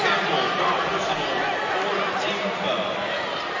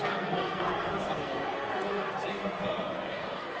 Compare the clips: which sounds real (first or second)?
first